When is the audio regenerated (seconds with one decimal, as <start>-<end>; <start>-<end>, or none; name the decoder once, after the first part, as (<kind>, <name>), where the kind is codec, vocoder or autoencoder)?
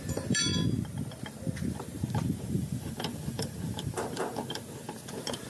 0.0-0.5 (vocoder, BigVGAN v2); 1.7-5.5